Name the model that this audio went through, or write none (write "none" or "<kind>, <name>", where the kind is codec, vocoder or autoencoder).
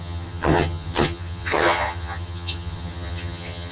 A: vocoder, HiFi-GAN